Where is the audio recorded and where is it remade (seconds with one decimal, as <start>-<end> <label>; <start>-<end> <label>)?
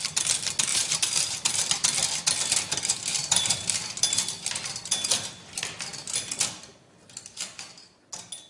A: 0.0-0.7 recorded; 0.7-1.6 remade; 1.6-3.1 recorded; 3.1-4.1 remade; 4.1-8.5 recorded